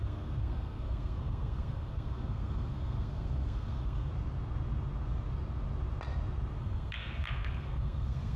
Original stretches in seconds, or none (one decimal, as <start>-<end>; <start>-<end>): 4.1-6.6